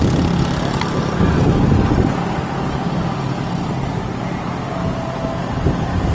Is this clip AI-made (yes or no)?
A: no